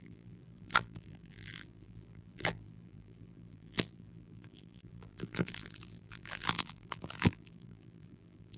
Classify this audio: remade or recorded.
remade